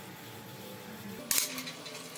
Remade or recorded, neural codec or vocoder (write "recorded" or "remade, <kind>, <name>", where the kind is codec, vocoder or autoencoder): recorded